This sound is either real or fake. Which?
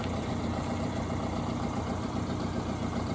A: fake